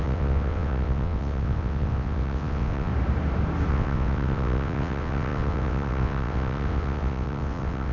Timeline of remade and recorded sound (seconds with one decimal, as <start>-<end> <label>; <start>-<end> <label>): 0.0-2.9 remade; 2.9-3.7 recorded; 3.7-7.9 remade